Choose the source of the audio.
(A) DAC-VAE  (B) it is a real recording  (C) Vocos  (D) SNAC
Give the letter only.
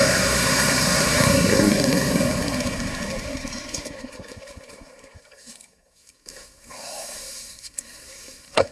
D